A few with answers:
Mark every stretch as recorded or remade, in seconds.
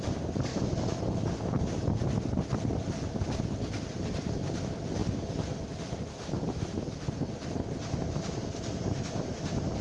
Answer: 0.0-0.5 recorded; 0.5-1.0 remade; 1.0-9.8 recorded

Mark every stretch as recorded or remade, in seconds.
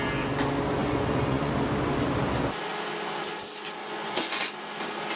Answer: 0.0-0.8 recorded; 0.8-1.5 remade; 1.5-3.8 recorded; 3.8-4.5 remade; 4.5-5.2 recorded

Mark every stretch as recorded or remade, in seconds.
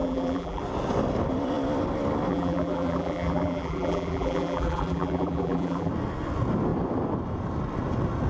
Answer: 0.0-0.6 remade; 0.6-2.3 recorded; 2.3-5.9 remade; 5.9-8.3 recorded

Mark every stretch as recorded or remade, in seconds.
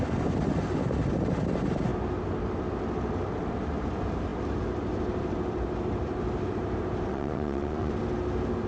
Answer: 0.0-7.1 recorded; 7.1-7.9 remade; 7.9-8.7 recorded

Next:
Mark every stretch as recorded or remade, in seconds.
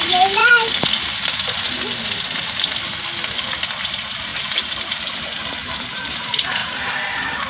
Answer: 0.0-0.4 remade; 0.4-3.8 recorded; 3.8-6.6 remade; 6.6-7.5 recorded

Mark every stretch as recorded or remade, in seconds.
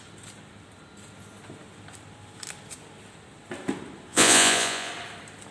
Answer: 0.0-4.1 recorded; 4.1-4.9 remade; 4.9-5.5 recorded